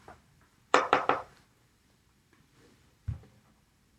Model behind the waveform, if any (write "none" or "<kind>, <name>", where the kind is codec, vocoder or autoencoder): vocoder, BigVGAN v2